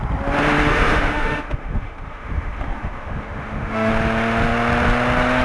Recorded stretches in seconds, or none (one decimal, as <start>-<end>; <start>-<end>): 0.0-0.7; 3.9-5.4